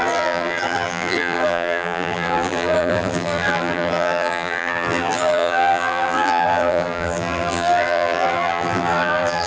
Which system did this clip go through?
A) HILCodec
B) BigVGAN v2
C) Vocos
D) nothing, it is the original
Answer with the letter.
B